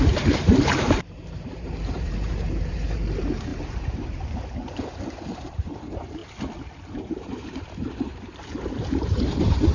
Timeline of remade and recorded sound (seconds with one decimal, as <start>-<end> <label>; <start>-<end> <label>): 0.0-6.2 remade; 6.2-6.9 recorded; 6.9-9.7 remade